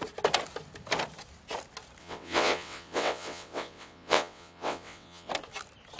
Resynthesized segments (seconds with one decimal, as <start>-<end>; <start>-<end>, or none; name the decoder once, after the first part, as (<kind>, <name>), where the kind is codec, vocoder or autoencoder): 2.0-5.3 (vocoder, WaveNeXt)